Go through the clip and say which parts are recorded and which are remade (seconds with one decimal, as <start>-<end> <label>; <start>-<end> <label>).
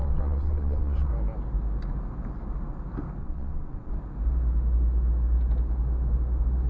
0.0-1.1 remade; 1.1-3.2 recorded; 3.2-3.9 remade; 3.9-6.7 recorded